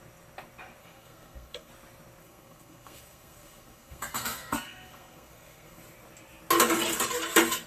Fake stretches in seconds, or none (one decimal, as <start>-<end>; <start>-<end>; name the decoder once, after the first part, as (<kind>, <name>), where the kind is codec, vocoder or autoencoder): 0.8-1.7 (codec, SNAC); 2.2-5.8